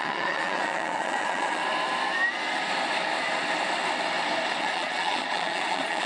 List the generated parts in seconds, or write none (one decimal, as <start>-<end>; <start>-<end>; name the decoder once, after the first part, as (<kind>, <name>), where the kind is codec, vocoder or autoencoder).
0.0-1.6 (vocoder, Vocos); 4.6-6.1